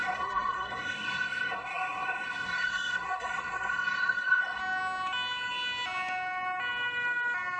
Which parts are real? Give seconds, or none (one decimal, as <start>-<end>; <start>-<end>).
4.6-7.6

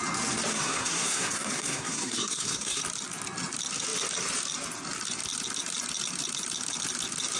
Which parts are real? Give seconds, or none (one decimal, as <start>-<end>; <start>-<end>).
0.0-0.5; 2.8-7.4

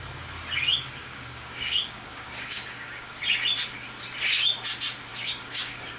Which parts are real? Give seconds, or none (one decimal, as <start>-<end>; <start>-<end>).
0.0-1.0; 3.2-5.1

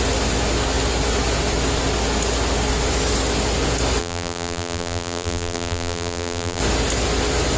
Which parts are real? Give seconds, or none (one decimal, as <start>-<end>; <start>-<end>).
0.0-4.0; 6.6-7.6

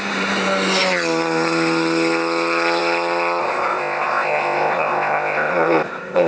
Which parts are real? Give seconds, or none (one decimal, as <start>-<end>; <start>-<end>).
0.0-3.4

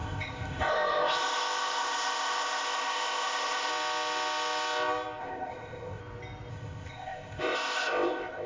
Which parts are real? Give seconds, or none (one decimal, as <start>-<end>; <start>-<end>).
3.7-5.2; 6.0-6.5